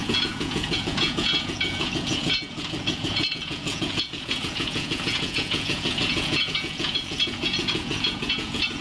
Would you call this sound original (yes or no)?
no